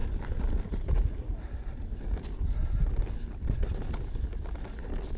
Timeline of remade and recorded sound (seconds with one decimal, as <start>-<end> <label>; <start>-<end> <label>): 0.0-5.2 recorded